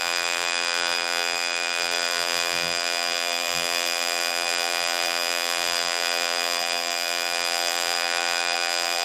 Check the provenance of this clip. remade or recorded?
remade